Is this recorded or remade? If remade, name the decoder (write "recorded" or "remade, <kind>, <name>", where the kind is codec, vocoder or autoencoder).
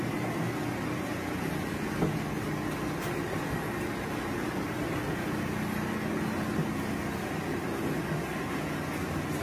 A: recorded